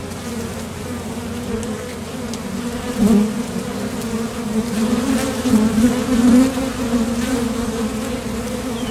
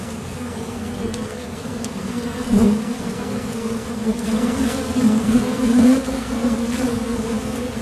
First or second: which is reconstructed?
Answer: second